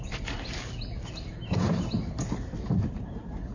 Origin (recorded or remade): recorded